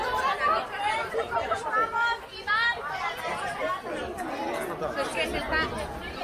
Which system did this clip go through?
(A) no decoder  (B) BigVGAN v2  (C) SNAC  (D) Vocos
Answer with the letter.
A